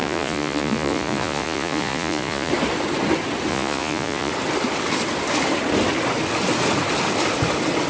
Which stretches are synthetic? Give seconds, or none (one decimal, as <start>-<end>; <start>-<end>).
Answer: 0.0-2.5; 3.5-4.3